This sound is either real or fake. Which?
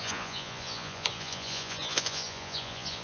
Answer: fake